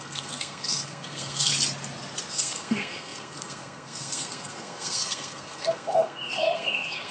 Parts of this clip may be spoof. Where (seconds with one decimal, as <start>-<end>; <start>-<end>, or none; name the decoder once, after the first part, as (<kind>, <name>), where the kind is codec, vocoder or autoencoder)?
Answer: 0.0-1.5 (codec, SNAC); 2.3-7.1

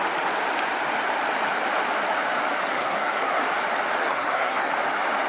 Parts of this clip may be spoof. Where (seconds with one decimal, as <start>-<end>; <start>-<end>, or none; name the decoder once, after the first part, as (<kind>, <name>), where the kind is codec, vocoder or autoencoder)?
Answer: 2.7-3.4 (codec, SNAC); 4.0-4.7